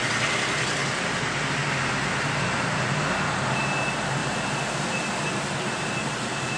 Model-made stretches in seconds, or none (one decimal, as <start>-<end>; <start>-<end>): none